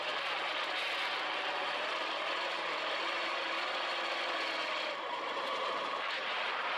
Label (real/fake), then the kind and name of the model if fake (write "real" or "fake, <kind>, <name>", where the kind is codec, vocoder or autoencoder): real